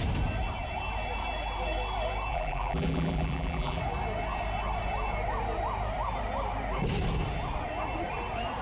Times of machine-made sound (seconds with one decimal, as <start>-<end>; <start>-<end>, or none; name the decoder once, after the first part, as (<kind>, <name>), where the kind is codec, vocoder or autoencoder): 2.3-3.8 (vocoder, BigVGAN v2)